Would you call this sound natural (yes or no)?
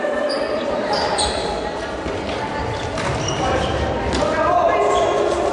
yes